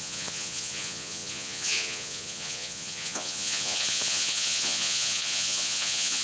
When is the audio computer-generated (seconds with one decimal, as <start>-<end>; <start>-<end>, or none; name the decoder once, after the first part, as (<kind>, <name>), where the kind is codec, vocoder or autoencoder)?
0.0-6.2 (vocoder, Vocos)